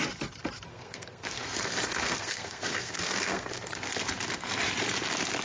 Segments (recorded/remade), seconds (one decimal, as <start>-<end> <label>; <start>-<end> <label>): 0.0-0.7 recorded; 0.7-1.4 remade; 1.4-1.9 recorded; 1.9-3.9 remade; 3.9-5.4 recorded